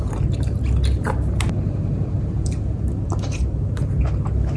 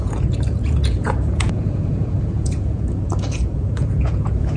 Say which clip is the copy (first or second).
second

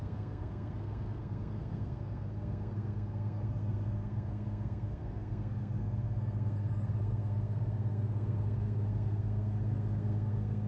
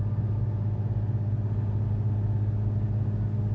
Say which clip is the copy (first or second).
first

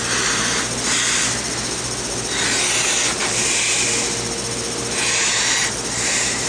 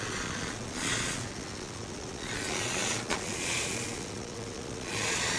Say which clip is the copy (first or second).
second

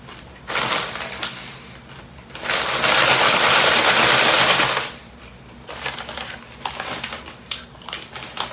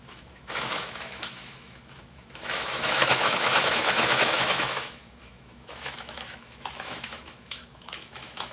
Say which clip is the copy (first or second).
second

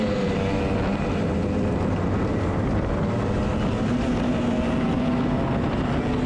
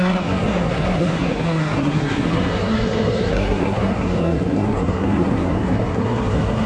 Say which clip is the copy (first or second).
second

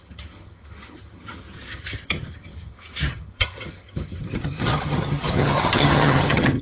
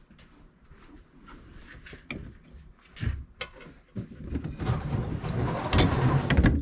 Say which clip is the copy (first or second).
first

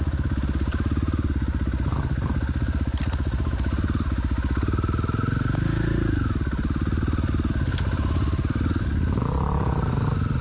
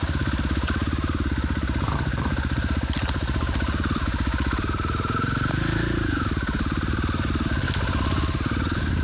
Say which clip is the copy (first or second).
second